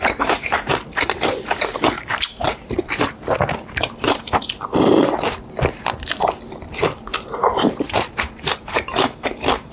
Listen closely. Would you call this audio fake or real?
fake